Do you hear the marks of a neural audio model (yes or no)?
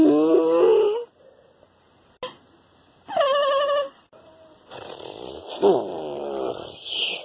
no